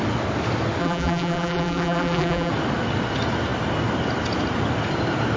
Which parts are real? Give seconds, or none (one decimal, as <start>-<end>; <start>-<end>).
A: 0.0-0.8; 2.5-5.4